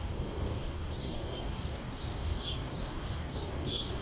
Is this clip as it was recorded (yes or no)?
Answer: no